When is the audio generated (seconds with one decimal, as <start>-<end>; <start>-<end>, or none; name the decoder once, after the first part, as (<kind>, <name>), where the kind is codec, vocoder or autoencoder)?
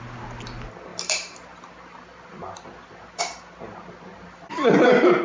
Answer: none